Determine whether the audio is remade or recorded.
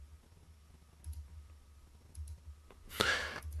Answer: recorded